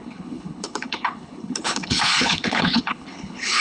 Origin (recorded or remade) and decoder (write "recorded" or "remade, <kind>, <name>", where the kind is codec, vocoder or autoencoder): remade, codec, HILCodec